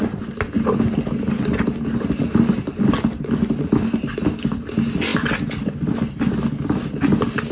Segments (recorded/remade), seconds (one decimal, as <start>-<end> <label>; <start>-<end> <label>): 0.0-5.1 recorded; 5.1-5.9 remade; 5.9-7.5 recorded